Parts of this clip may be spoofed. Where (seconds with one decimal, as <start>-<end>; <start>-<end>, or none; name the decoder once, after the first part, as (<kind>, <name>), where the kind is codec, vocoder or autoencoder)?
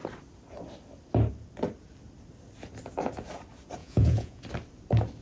3.8-4.4 (vocoder, Vocos)